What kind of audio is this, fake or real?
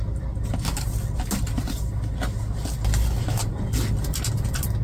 real